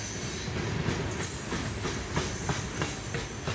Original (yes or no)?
yes